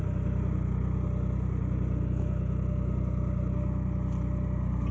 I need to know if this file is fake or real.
real